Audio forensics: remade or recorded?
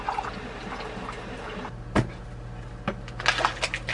recorded